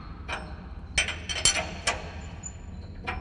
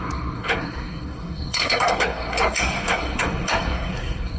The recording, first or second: first